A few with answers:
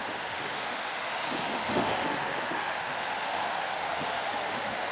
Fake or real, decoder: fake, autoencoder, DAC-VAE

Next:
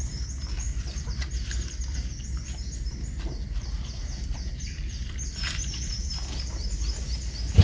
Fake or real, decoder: fake, vocoder, BigVGAN v2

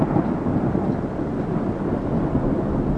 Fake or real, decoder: real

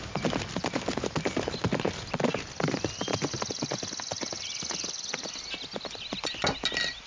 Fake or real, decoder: real